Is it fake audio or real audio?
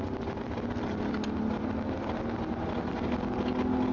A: real